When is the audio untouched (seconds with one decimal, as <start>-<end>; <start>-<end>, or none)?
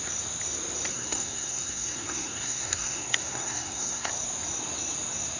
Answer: 0.0-0.9; 4.1-5.4